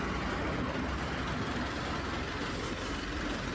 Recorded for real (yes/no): yes